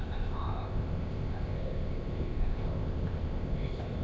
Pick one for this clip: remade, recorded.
remade